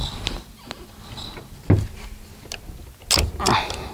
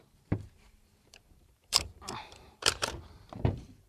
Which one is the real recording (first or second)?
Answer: first